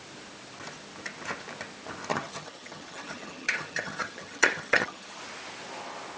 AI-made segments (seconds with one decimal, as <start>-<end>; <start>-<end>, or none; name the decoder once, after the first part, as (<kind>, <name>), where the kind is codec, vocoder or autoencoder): 2.1-5.2 (vocoder, HiFi-GAN)